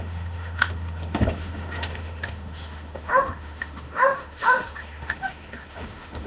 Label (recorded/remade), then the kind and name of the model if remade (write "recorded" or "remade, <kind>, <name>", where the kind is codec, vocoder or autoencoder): remade, autoencoder, DAC-VAE